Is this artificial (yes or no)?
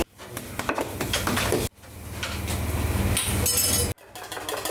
no